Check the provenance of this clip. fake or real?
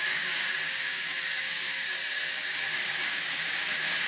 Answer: fake